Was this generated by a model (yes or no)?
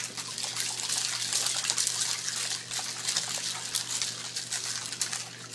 no